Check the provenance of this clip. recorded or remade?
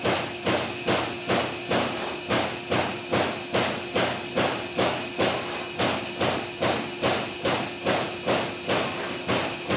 recorded